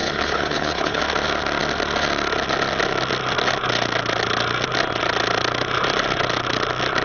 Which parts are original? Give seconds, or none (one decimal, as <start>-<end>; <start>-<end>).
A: 1.0-7.0